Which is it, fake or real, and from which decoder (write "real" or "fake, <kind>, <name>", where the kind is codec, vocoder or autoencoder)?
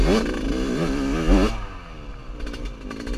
real